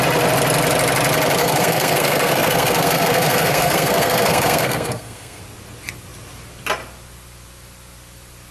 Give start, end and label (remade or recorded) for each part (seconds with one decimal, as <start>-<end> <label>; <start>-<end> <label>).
0.0-1.4 recorded; 1.4-5.4 remade; 5.4-8.5 recorded